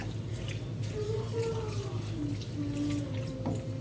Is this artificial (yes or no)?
no